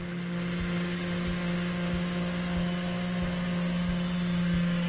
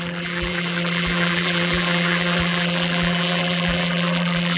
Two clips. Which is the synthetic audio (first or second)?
second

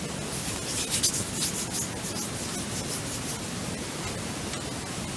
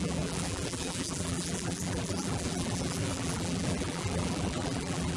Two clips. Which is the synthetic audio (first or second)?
second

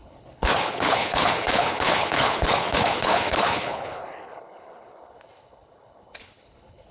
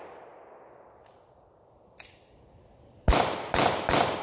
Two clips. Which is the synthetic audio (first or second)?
first